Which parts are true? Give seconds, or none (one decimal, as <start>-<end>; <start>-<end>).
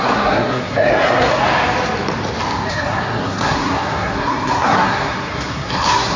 1.3-2.7